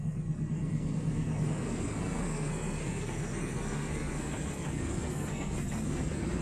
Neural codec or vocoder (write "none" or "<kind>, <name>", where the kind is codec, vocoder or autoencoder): codec, SNAC